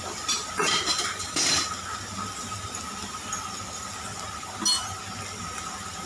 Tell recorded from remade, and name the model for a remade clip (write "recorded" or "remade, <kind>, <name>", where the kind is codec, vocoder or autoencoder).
recorded